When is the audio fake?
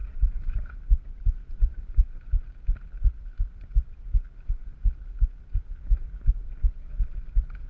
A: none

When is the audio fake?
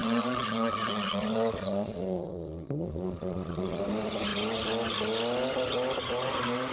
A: 0.0-3.8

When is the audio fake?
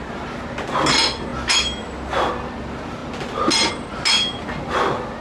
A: none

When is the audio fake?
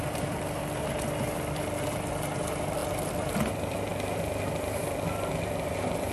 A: none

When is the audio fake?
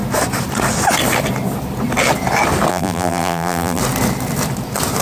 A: 2.7-3.8